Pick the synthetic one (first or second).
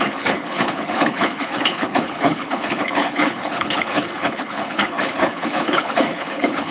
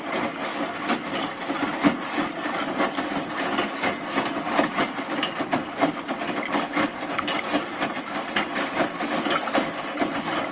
first